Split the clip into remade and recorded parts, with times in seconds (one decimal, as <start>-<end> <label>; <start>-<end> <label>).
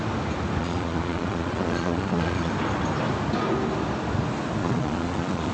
0.0-0.6 recorded; 0.6-2.5 remade; 2.5-4.6 recorded; 4.6-5.5 remade